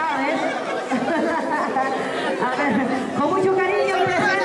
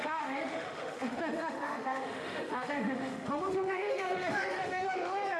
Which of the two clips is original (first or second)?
first